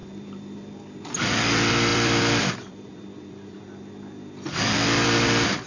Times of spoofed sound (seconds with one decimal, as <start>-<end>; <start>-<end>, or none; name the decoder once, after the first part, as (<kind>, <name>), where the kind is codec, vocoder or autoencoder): 0.0-0.7 (vocoder, BigVGAN v2); 1.9-3.3